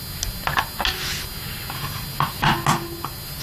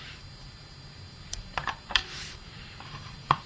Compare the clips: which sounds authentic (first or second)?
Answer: first